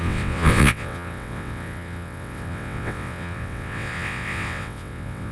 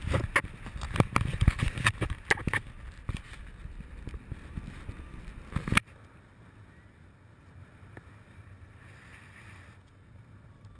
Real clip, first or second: second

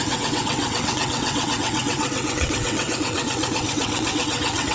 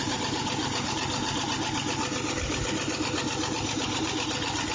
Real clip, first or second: second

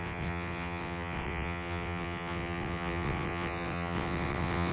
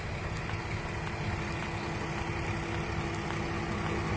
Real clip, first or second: second